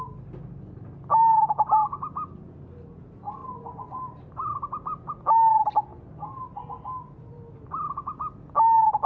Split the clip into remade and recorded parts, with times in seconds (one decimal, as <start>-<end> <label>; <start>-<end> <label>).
0.0-3.4 recorded; 3.4-5.1 remade; 5.1-5.9 recorded; 5.9-6.5 remade; 6.5-9.1 recorded